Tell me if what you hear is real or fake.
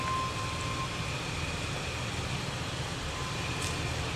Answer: real